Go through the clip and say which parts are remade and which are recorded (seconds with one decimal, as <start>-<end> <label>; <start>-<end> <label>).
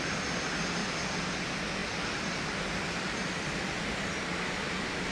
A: 0.0-0.8 recorded; 0.8-1.4 remade; 1.4-1.8 recorded; 1.8-4.0 remade; 4.0-5.1 recorded